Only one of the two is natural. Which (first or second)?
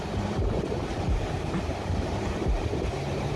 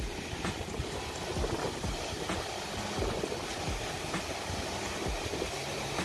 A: second